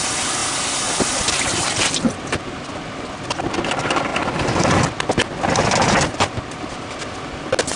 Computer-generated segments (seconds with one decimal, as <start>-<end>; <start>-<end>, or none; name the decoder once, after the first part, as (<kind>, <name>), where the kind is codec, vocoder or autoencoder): none